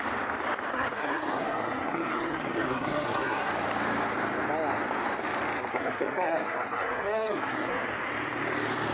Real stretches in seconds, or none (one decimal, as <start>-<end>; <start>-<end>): 0.0-0.7; 3.5-5.7; 7.9-8.9